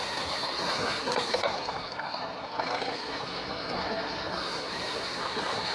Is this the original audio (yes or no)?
no